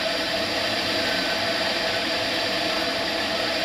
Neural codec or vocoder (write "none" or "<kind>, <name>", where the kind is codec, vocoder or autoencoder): vocoder, BigVGAN v2